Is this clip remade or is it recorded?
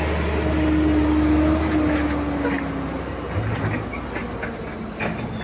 recorded